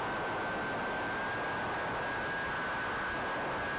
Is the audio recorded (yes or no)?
yes